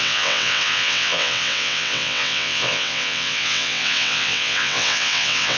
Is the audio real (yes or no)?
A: no